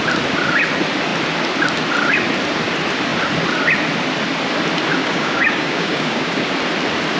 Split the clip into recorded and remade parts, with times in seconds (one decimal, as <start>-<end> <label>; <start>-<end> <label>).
0.0-5.0 recorded; 5.0-6.5 remade; 6.5-7.2 recorded